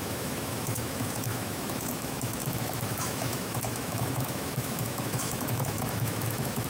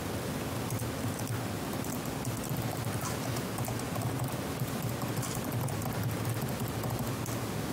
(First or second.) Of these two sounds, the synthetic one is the first